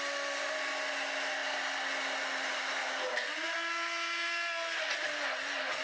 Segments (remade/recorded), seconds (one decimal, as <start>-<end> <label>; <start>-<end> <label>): 0.0-5.8 recorded